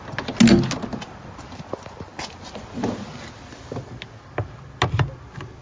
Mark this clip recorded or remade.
recorded